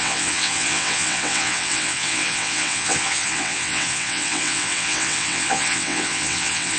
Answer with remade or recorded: remade